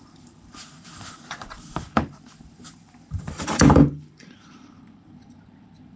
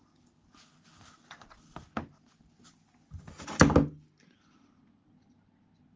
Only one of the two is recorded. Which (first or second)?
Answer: second